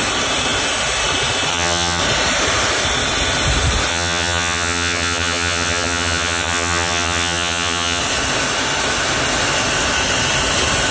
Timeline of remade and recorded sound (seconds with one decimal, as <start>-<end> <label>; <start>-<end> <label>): 0.0-1.5 recorded; 1.5-2.0 remade; 2.0-3.9 recorded; 3.9-8.0 remade; 8.0-10.9 recorded